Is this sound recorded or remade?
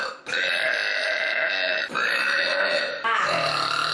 recorded